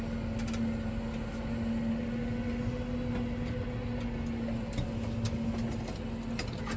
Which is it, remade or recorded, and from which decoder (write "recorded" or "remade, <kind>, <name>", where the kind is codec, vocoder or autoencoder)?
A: recorded